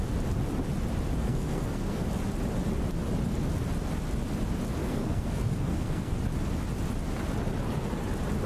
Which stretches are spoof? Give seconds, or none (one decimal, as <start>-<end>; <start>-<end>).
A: 1.2-2.1; 4.8-6.2